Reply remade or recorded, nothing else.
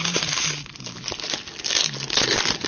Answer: recorded